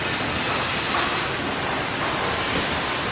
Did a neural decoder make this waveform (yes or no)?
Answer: no